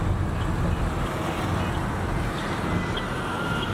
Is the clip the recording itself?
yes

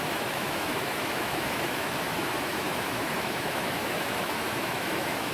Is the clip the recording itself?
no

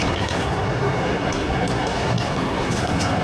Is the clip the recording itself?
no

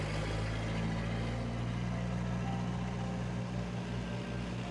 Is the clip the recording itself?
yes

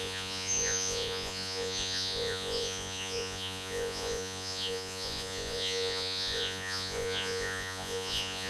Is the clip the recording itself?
no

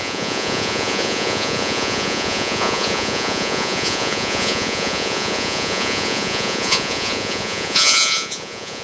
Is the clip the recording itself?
no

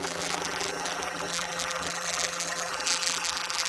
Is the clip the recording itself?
no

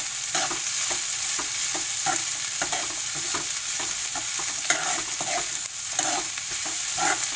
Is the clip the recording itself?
yes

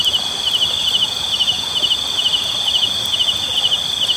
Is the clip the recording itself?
yes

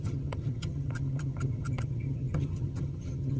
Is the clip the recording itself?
no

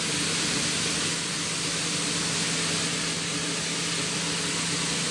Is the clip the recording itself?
yes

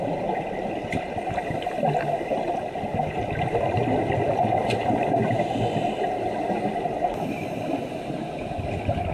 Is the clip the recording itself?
yes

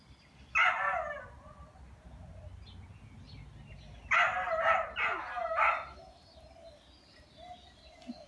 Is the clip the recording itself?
yes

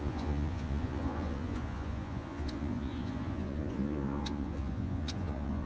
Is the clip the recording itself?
no